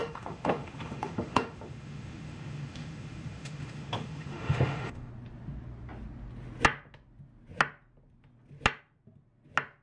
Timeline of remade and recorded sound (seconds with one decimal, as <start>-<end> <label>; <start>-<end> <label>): 0.0-5.1 remade; 5.1-9.8 recorded